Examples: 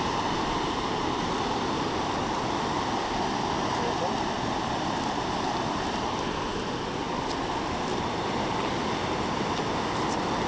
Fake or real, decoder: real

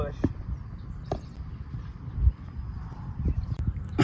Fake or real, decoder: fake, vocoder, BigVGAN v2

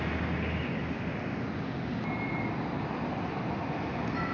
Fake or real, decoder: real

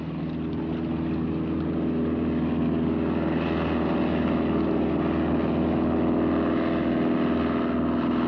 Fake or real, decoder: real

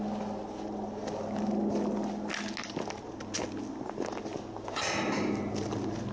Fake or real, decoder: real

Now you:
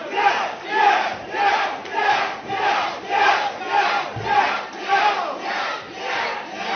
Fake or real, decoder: real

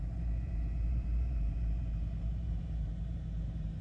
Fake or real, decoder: fake, vocoder, BigVGAN v2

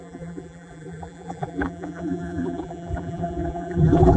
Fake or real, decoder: fake, vocoder, BigVGAN v2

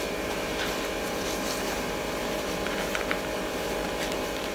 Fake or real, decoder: fake, vocoder, BigVGAN v2